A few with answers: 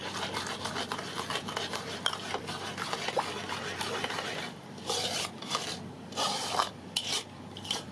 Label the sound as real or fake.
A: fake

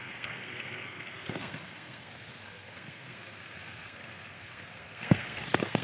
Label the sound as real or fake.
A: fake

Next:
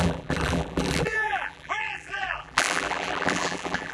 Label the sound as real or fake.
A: fake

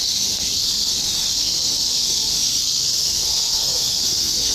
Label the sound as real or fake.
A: fake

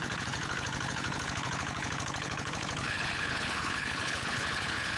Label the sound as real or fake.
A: fake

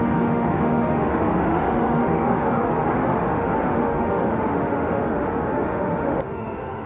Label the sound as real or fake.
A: fake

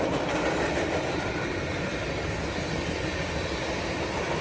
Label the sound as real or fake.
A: real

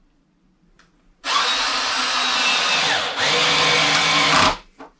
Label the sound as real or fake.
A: real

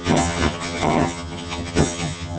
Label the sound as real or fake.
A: fake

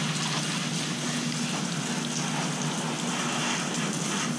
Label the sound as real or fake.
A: real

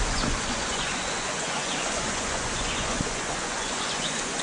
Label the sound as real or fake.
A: fake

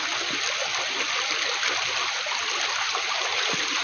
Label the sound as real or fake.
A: real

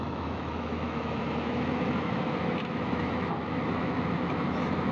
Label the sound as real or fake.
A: fake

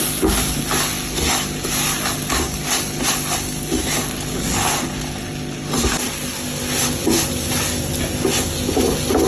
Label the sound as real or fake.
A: real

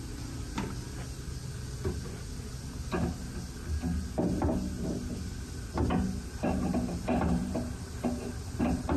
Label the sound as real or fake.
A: real